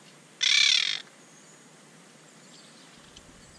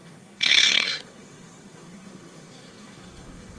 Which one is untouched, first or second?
first